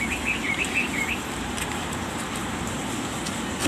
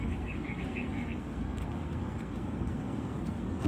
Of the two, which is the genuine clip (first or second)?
first